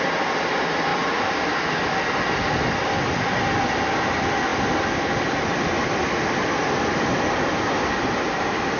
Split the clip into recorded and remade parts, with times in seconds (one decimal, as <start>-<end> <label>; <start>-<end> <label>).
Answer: 0.0-8.8 recorded